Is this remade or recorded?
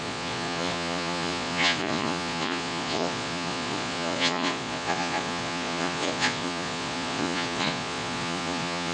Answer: remade